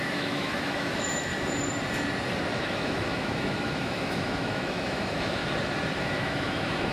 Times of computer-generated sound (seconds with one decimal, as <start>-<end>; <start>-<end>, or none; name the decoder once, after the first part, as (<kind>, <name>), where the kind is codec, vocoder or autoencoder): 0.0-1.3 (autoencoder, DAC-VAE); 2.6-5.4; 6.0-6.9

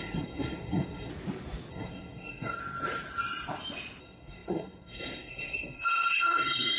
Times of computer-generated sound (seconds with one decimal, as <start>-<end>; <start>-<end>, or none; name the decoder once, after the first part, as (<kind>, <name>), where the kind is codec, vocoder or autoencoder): 0.0-1.1 (codec, SNAC); 1.7-2.6; 4.0-6.8

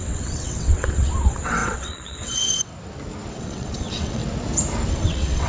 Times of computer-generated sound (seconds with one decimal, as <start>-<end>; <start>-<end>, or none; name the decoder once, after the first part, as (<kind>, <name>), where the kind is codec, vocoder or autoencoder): 0.0-2.7 (vocoder, WaveNeXt); 3.3-4.2; 4.9-5.5

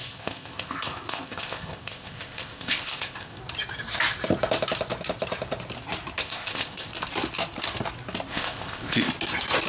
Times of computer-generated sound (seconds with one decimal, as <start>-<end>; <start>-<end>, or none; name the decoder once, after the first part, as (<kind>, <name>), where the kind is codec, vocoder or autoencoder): 0.0-3.4 (codec, ZipCodec); 6.2-6.9; 8.3-9.1